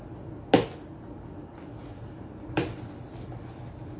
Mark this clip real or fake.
real